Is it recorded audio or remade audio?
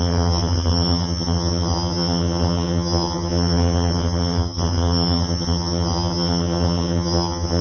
remade